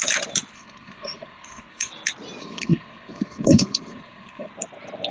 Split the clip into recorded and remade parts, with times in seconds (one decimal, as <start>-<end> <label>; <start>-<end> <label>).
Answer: 0.0-0.5 recorded; 0.5-1.9 remade; 1.9-2.4 recorded; 2.4-4.5 remade; 4.5-5.1 recorded